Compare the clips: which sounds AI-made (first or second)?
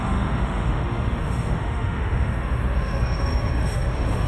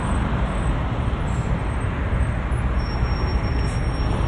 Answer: first